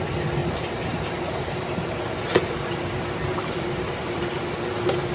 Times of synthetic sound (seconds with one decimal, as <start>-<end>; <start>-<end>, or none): 0.4-2.6; 3.3-4.2

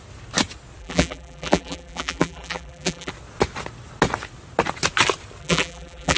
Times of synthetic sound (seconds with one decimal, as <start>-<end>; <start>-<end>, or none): 0.8-3.1; 5.4-6.2

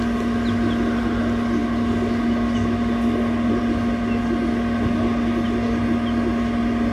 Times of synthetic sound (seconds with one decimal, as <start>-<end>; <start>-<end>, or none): none